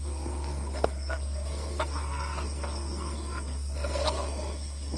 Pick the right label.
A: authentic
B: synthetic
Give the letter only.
B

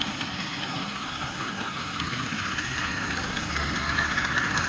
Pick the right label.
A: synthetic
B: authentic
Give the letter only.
A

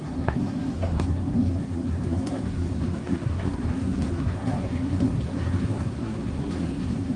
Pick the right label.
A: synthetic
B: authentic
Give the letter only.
A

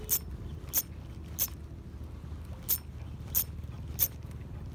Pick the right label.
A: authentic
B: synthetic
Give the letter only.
A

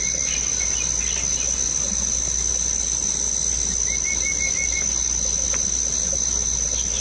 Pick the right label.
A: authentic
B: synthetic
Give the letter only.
A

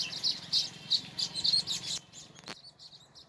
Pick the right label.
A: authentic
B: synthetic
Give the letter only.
A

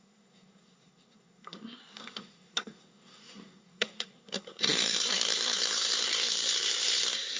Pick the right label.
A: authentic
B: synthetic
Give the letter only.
B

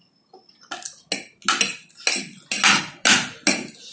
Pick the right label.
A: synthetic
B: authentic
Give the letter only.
B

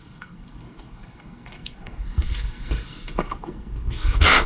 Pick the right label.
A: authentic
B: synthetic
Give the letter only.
B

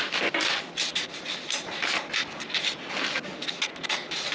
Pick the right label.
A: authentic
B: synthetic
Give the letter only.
A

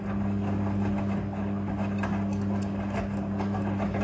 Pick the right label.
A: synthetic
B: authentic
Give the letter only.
B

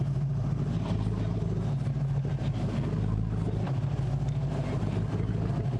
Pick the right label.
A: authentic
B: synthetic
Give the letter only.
A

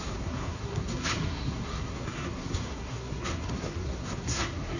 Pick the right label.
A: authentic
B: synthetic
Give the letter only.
B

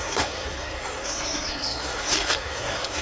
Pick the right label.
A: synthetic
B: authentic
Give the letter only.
A